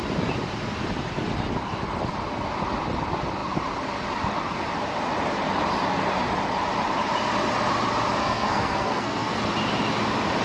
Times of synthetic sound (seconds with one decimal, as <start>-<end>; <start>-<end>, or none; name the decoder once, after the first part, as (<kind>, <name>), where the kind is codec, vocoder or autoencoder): 8.2-9.4 (codec, SNAC)